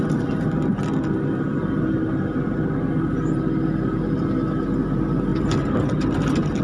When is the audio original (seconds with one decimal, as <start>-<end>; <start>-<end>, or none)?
0.0-6.6